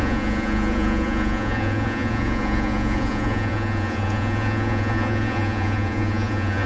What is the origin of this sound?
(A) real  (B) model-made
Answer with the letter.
B